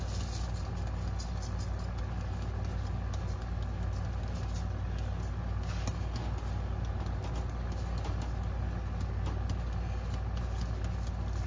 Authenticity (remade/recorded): recorded